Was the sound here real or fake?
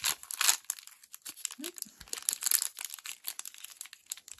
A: real